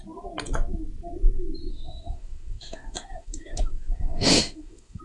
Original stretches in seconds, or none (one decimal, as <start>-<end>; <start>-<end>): 0.0-1.7